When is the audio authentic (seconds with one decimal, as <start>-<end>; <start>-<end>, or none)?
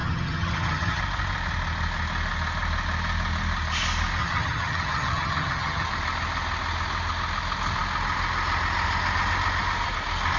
1.0-4.2; 5.9-10.4